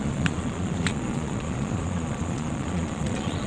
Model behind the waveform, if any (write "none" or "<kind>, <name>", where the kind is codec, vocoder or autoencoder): vocoder, Vocos